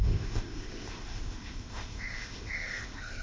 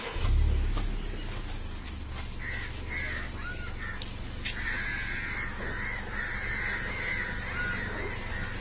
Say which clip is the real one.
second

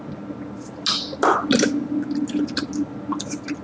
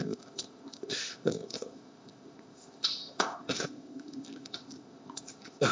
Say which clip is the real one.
first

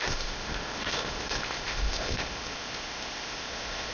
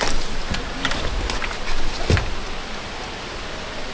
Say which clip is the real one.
second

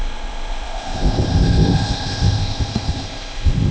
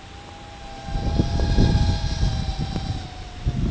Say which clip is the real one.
second